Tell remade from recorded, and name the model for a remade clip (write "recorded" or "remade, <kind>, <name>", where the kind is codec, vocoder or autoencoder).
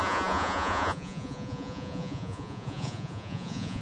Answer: remade, vocoder, Vocos